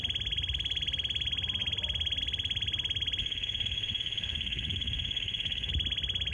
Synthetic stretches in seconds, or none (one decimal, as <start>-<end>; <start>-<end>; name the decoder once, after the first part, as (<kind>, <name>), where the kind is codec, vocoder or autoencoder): 3.2-5.7 (autoencoder, DAC-VAE)